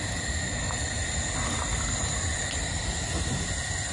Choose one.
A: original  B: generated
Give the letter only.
A